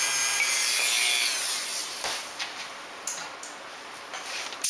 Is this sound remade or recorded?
recorded